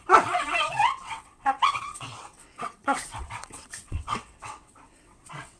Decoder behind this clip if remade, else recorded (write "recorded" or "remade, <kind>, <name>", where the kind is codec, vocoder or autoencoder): remade, vocoder, WaveNeXt